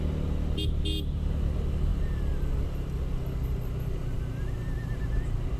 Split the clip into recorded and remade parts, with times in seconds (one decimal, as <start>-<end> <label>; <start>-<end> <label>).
0.0-5.6 recorded